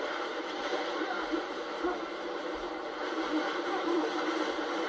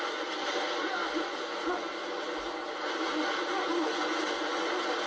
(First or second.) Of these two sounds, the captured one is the second